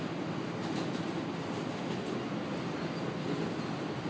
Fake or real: real